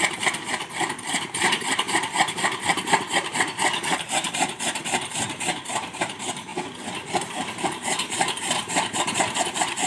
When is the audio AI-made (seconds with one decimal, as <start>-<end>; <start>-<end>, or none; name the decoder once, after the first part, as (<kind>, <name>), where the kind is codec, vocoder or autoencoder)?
0.0-6.5 (vocoder, BigVGAN v2); 7.2-9.9